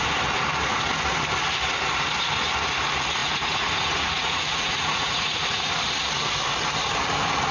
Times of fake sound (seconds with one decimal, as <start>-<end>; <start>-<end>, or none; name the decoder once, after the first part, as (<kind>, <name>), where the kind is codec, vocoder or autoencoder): 3.2-5.7 (vocoder, Vocos)